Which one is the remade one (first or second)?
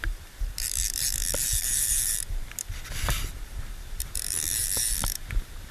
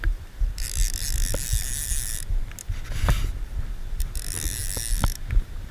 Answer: first